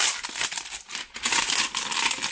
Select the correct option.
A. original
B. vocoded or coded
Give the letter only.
A